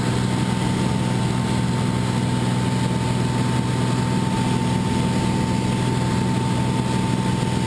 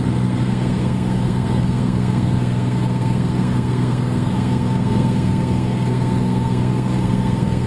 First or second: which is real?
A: first